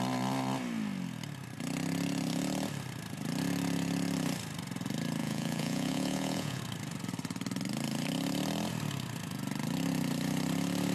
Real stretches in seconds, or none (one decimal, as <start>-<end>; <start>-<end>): 0.0-5.2; 6.6-10.9

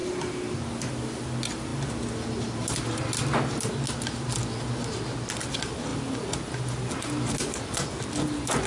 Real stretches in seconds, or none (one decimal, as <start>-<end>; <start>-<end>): 0.0-8.7

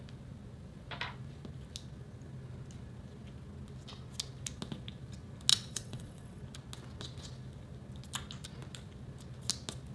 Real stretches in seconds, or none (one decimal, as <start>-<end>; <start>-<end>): 0.0-5.5; 6.4-9.9

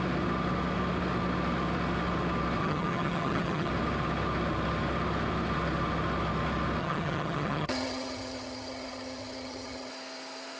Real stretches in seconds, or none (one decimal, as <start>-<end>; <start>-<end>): 0.0-2.6; 3.7-6.8; 9.9-10.6

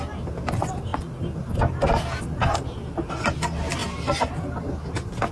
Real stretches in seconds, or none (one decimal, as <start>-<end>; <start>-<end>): 0.0-5.3

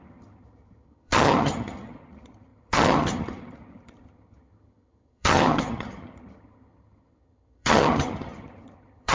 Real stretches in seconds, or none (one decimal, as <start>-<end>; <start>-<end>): none